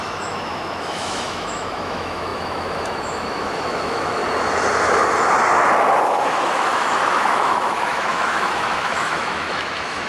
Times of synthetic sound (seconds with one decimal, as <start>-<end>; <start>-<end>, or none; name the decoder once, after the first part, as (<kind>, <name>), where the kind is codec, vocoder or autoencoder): 0.0-4.2 (autoencoder, DAC-VAE); 6.0-10.1